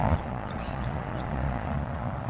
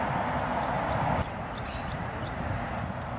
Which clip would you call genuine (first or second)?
second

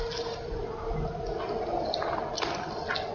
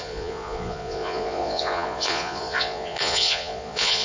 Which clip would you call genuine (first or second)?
first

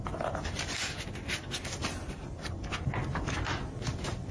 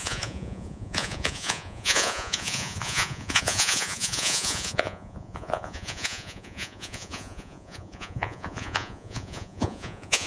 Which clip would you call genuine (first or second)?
first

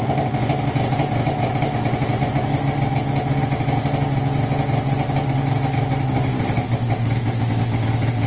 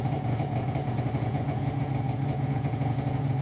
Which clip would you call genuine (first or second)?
first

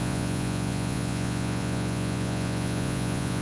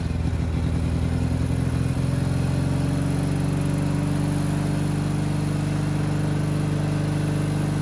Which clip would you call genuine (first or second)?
second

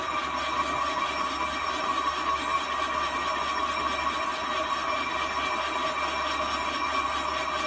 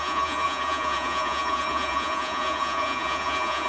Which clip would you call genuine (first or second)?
first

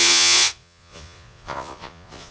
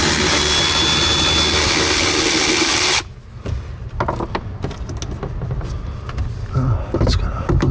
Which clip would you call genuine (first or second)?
second